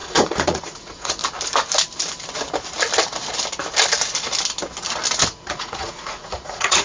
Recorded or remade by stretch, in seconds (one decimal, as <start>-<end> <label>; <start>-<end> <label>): 0.0-1.2 remade; 1.2-5.3 recorded; 5.3-6.8 remade